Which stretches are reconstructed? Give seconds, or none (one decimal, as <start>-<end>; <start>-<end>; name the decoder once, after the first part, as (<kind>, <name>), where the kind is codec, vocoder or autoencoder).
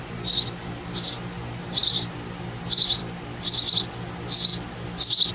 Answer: none